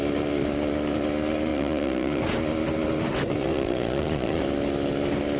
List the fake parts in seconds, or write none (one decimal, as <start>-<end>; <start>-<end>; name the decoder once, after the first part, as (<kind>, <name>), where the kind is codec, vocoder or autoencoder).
1.5-2.2 (vocoder, Vocos); 3.5-4.4